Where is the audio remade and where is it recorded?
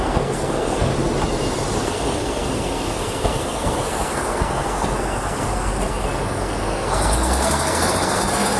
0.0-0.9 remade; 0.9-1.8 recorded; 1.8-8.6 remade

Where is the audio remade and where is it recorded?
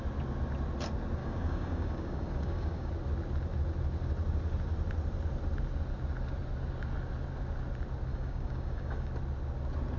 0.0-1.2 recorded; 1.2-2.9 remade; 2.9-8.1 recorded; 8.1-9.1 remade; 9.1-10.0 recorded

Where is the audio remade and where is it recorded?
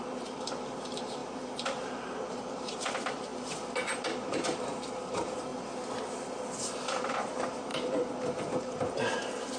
0.0-3.3 remade; 3.3-4.2 recorded; 4.2-5.5 remade; 5.5-7.1 recorded; 7.1-7.7 remade; 7.7-8.6 recorded; 8.6-9.6 remade